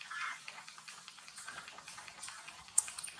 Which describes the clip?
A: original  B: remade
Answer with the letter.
B